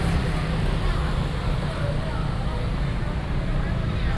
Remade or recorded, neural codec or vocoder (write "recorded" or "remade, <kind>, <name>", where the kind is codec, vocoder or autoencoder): recorded